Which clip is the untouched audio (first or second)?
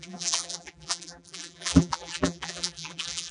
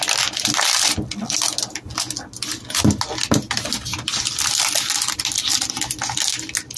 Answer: second